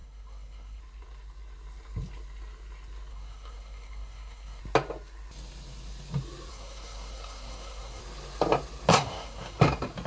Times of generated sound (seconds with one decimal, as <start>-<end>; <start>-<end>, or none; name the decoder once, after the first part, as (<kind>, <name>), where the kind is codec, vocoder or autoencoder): 0.0-0.8 (codec, SNAC); 3.1-4.6; 6.5-8.0; 8.9-9.6